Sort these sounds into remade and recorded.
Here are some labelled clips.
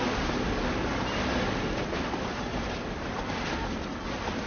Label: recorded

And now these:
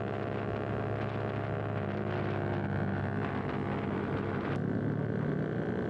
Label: recorded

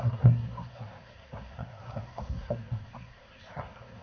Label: remade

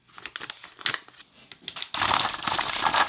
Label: recorded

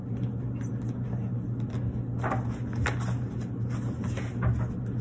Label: recorded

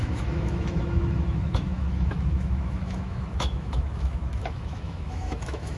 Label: remade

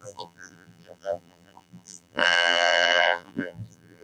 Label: remade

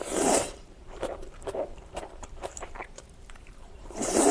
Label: remade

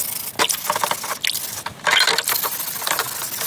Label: recorded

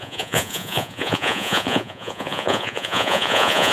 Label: remade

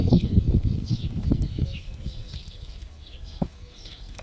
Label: remade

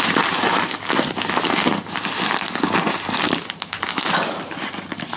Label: recorded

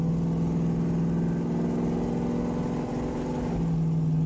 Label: recorded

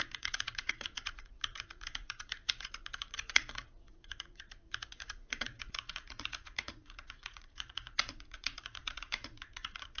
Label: remade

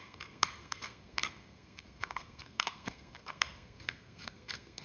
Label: remade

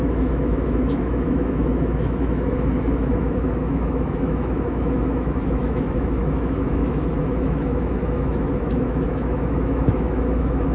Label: remade